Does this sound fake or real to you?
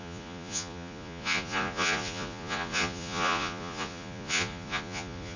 fake